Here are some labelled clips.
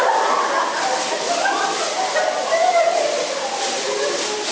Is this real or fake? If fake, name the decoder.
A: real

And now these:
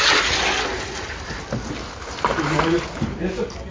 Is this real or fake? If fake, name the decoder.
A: real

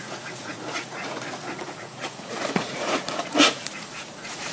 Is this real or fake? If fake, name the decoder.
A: fake, vocoder, Vocos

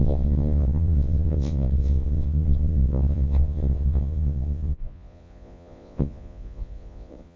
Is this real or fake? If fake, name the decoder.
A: fake, vocoder, Vocos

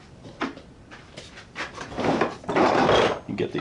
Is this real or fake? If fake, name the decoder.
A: real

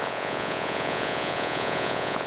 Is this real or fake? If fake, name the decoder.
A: fake, vocoder, Vocos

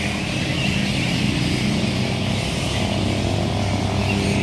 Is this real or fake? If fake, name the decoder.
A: real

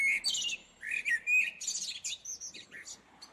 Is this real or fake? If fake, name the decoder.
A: real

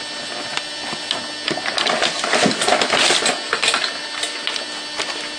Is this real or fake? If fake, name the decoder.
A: real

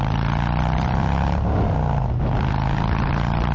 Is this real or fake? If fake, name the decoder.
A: real